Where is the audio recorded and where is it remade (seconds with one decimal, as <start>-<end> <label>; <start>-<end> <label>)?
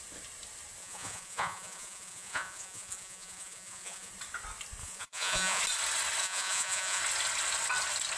0.0-0.8 recorded; 0.8-4.1 remade; 4.1-4.8 recorded; 4.8-5.6 remade; 5.6-6.2 recorded; 6.2-7.0 remade; 7.0-8.2 recorded